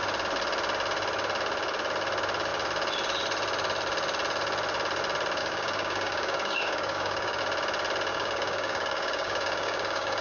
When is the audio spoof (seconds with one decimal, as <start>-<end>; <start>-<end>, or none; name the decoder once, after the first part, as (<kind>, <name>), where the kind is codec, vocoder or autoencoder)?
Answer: 5.4-7.4 (codec, DAC); 8.1-10.2